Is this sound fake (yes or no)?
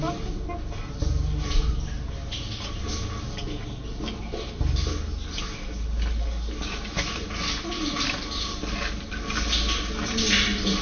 no